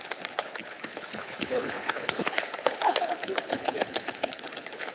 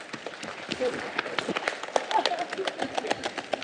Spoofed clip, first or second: first